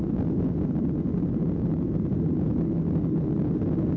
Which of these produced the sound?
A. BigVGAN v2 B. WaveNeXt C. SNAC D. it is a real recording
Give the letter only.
D